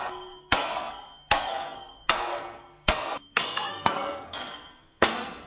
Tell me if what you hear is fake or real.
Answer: fake